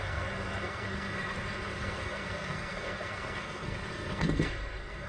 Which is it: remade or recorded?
remade